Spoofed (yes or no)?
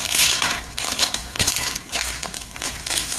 yes